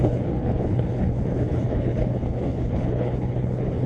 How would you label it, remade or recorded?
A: remade